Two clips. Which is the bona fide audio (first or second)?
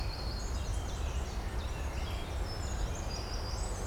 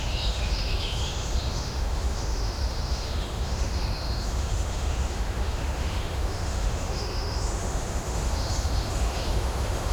first